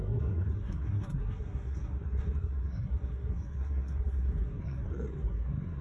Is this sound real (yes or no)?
no